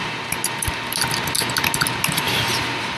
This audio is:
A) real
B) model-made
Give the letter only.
A